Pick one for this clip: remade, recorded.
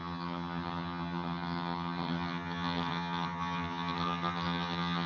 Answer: remade